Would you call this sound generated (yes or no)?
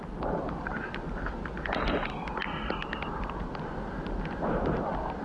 no